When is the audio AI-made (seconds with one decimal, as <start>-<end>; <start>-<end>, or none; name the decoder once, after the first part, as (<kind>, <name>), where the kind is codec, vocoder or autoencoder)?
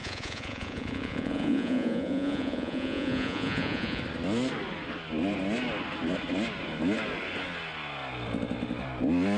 0.0-4.0 (vocoder, Vocos)